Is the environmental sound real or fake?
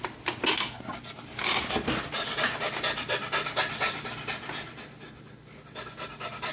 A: real